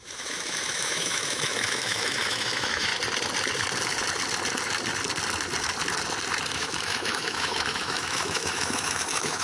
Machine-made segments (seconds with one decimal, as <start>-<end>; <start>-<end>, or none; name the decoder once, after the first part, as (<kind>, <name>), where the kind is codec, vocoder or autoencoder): 0.0-2.9 (autoencoder, DAC-VAE); 6.5-9.4